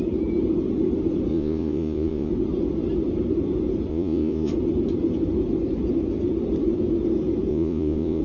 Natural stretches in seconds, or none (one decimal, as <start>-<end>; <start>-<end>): 0.0-1.3; 2.3-3.9; 4.5-7.5